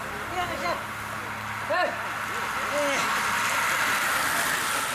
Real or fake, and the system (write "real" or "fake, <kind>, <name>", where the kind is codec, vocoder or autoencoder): real